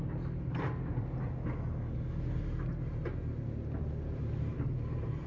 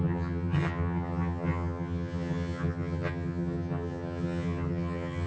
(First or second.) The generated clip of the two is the second